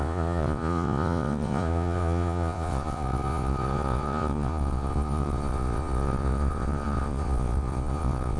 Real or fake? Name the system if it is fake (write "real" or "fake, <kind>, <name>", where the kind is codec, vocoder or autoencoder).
fake, vocoder, Vocos